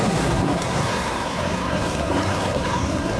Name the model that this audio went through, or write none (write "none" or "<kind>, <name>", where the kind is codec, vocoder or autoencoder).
codec, SNAC